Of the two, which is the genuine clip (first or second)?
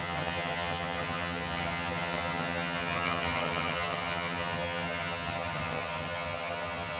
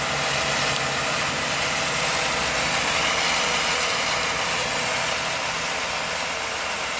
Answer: second